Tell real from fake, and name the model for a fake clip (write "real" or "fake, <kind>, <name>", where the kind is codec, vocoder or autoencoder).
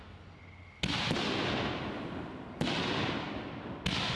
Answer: real